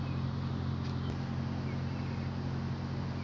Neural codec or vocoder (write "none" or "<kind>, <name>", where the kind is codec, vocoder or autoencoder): none